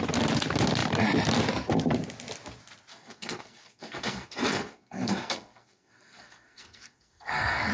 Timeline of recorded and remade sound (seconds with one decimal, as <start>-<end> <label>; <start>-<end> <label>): 0.0-2.9 recorded; 2.9-7.7 remade